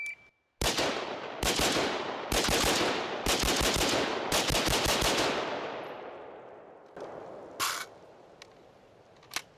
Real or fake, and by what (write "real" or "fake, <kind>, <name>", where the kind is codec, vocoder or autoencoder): real